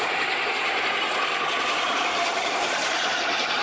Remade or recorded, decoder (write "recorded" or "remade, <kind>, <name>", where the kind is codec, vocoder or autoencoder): remade, vocoder, BigVGAN v2